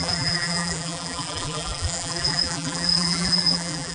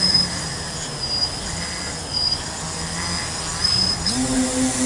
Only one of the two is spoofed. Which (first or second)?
first